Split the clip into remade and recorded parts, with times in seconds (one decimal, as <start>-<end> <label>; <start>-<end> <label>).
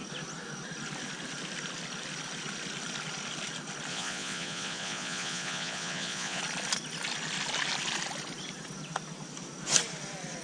0.0-3.9 recorded; 3.9-6.4 remade; 6.4-10.4 recorded